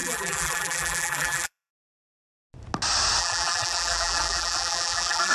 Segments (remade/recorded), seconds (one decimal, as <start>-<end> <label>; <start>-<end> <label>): 0.0-1.7 remade; 1.7-3.2 recorded; 3.2-5.3 remade